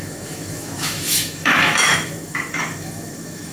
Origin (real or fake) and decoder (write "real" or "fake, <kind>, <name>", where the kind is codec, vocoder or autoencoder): fake, autoencoder, DAC-VAE